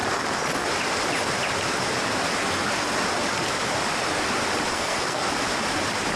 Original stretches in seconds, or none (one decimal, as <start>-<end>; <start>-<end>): 0.0-4.7; 5.3-6.2